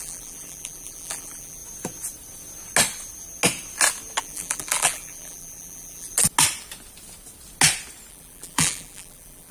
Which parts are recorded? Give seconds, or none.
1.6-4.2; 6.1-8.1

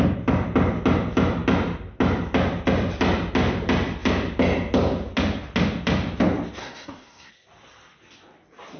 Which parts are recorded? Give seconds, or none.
0.0-6.6; 7.3-8.8